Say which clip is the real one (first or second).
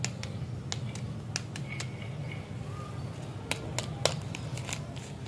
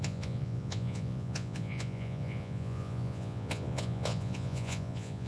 first